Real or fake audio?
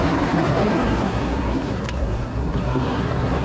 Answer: fake